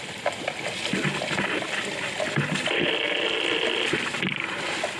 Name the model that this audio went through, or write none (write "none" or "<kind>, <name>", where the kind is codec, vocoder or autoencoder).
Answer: none